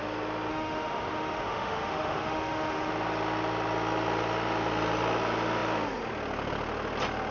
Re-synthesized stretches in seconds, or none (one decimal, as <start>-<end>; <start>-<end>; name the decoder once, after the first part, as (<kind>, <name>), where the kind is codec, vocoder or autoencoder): 0.5-2.9 (autoencoder, DAC-VAE)